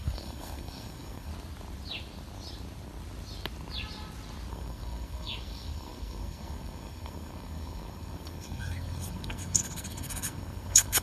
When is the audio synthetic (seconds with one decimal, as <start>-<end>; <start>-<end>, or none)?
0.0-1.3; 4.5-11.0